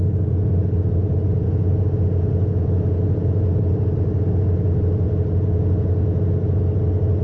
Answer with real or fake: real